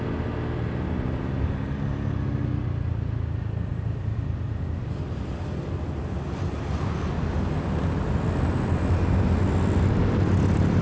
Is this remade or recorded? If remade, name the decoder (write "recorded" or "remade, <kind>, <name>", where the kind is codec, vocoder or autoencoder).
recorded